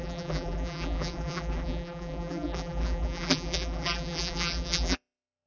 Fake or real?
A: fake